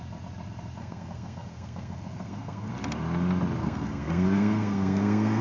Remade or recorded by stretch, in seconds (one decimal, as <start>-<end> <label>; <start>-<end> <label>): 0.0-0.8 recorded; 0.8-2.7 remade; 2.7-3.6 recorded; 3.6-5.4 remade